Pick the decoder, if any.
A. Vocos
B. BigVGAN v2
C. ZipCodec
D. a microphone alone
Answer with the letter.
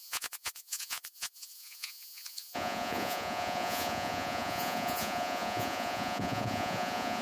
A